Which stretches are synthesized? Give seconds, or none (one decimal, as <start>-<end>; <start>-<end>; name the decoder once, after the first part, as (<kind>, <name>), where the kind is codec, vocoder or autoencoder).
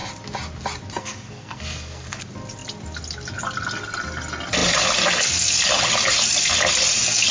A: 1.0-2.2 (codec, SNAC)